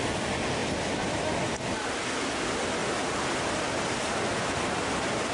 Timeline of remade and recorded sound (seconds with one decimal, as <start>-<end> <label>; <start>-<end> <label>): 0.0-0.6 remade; 0.6-2.2 recorded; 2.2-5.3 remade